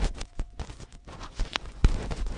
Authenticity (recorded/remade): remade